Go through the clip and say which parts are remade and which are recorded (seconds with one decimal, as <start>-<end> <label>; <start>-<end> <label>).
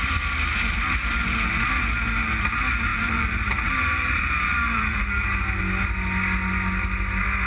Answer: 0.0-2.9 recorded; 2.9-5.6 remade; 5.6-7.5 recorded